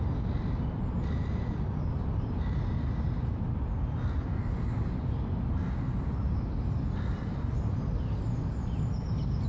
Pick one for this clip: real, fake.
real